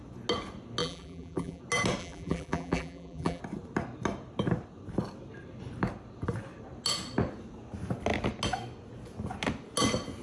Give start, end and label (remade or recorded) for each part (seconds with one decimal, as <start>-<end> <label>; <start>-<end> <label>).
0.0-0.8 recorded; 0.8-1.6 remade; 1.6-2.0 recorded; 2.0-3.4 remade; 3.4-10.2 recorded